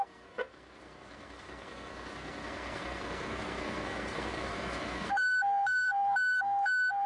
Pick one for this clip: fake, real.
fake